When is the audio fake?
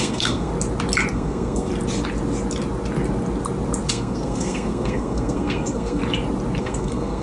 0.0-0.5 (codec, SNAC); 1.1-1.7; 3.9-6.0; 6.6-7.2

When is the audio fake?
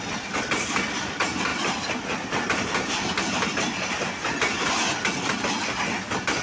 none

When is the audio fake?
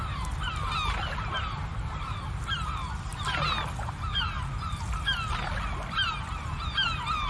none